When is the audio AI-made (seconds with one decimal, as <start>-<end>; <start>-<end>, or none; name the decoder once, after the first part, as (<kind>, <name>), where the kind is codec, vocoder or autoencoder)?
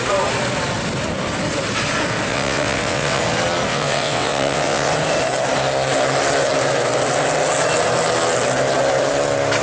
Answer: 2.3-3.2 (vocoder, WaveNeXt); 3.7-4.9